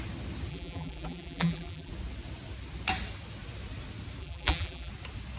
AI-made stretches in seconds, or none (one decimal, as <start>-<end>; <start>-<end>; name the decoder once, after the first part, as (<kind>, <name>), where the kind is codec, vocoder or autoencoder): 0.5-1.9 (vocoder, BigVGAN v2); 4.2-4.9